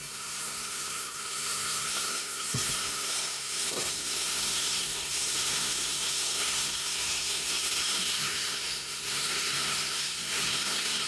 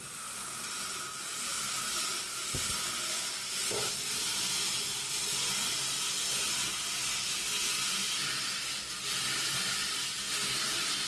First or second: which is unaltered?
second